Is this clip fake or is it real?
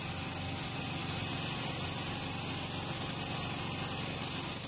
real